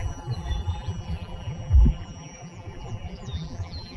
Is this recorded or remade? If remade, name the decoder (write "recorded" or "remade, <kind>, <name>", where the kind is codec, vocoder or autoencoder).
remade, vocoder, BigVGAN v2